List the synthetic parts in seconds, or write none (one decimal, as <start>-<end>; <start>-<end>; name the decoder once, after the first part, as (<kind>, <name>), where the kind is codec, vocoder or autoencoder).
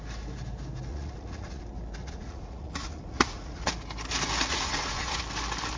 0.9-1.6 (vocoder, Vocos); 2.0-3.7; 4.5-5.2